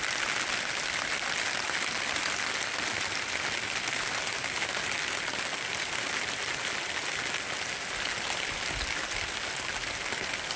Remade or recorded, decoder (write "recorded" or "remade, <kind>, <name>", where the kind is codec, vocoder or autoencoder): recorded